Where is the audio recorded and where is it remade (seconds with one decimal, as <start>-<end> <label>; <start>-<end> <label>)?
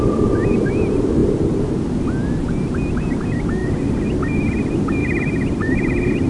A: 0.0-1.2 recorded; 1.2-2.0 remade; 2.0-5.0 recorded; 5.0-6.3 remade